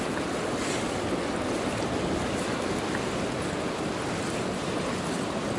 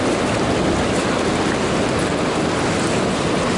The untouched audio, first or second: second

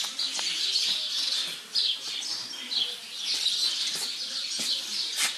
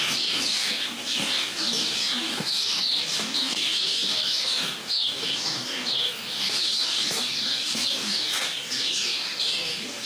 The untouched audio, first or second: first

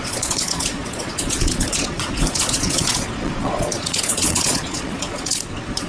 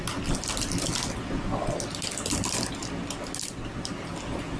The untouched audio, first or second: second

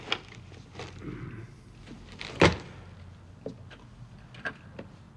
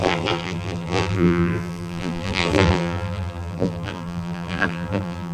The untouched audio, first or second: first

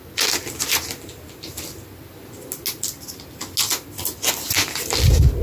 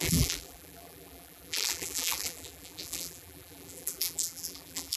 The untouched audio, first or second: first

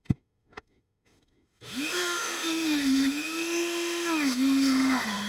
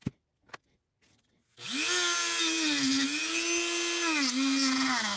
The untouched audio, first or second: second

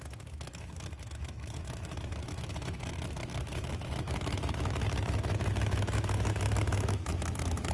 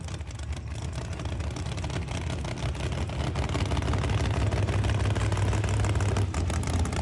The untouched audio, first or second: second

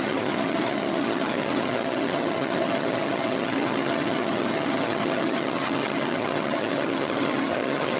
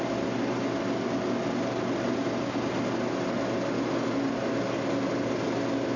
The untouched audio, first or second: second